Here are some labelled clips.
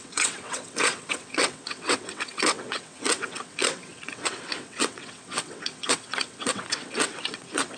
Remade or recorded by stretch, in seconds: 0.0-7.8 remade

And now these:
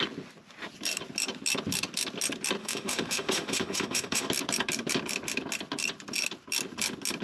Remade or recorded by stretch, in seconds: 0.0-2.6 recorded; 2.6-4.3 remade; 4.3-7.2 recorded

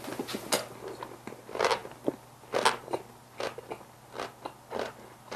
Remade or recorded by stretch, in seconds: 0.0-5.4 recorded